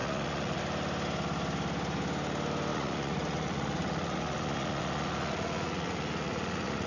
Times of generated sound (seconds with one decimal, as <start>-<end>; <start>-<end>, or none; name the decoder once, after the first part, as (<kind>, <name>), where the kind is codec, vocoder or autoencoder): 0.0-0.6 (vocoder, Vocos); 2.7-6.9